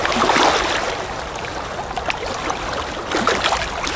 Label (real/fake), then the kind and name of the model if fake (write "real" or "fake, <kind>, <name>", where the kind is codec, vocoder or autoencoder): real